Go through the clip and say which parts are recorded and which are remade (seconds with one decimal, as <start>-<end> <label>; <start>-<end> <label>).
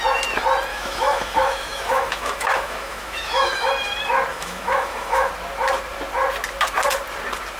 0.0-0.7 recorded; 0.7-3.7 remade; 3.7-4.3 recorded; 4.3-5.3 remade; 5.3-7.6 recorded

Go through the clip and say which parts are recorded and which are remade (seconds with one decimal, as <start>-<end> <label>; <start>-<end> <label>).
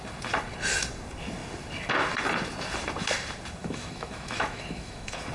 0.0-3.6 recorded; 3.6-5.3 remade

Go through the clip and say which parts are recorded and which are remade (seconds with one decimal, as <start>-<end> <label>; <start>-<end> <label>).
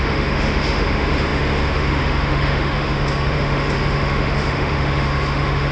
0.0-5.7 remade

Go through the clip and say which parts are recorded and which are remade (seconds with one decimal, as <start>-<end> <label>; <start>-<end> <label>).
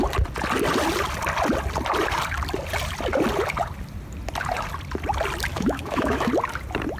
0.0-5.5 recorded; 5.5-6.3 remade; 6.3-7.0 recorded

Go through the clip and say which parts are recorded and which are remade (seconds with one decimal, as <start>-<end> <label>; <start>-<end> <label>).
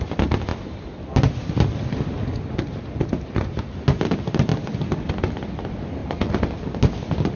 0.0-7.4 recorded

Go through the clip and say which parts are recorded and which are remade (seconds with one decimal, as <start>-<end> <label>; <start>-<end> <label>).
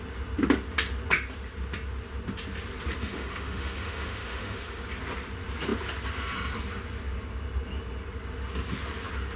0.0-3.0 recorded; 3.0-4.8 remade; 4.8-9.4 recorded